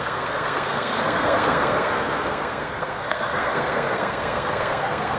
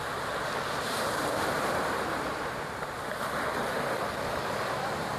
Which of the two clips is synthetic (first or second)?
first